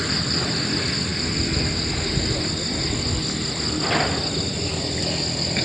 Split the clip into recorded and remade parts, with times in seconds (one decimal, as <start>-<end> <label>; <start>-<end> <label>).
0.0-5.6 recorded